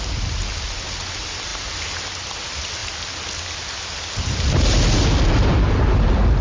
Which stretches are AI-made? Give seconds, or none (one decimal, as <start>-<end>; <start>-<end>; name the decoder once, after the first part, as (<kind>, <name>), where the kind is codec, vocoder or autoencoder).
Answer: none